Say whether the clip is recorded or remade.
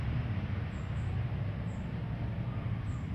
recorded